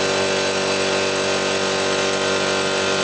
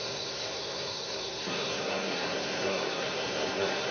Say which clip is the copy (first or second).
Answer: second